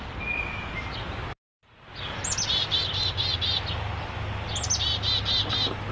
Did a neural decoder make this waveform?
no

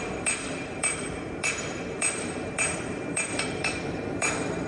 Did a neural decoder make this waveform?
yes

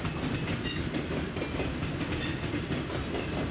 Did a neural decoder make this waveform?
no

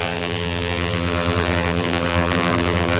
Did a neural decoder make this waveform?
yes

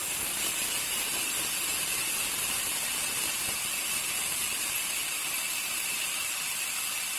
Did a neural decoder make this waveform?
yes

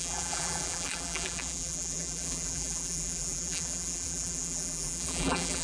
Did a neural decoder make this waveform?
yes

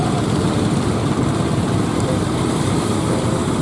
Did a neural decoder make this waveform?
no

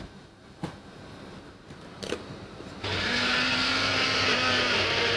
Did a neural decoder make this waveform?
yes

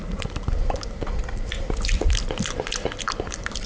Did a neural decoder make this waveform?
yes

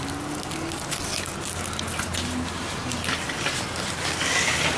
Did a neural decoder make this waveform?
no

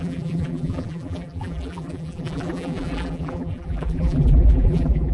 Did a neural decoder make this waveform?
yes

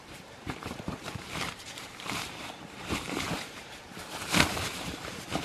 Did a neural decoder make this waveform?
yes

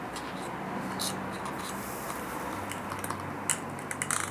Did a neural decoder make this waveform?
no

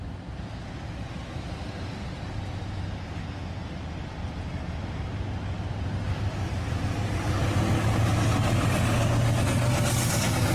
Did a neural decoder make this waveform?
no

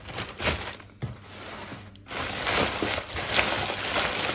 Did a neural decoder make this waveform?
no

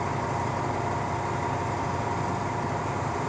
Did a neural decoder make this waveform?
yes